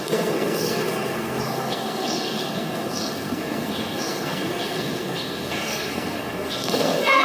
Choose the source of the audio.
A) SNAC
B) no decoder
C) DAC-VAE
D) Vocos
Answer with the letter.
A